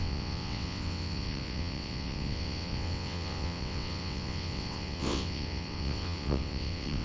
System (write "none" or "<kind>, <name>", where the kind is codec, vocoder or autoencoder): vocoder, WaveNeXt